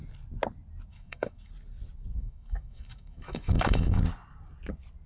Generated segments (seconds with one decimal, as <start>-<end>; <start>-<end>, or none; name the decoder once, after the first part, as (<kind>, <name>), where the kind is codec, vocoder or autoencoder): 0.9-1.5 (autoencoder, DAC-VAE); 2.2-4.0